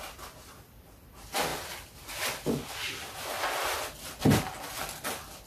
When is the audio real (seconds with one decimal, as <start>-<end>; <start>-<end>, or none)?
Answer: 0.0-5.5